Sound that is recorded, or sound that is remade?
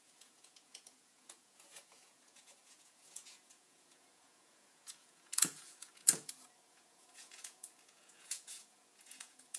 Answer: remade